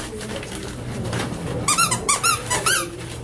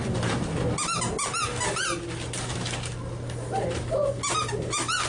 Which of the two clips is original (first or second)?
second